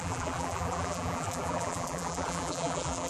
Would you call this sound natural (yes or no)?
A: no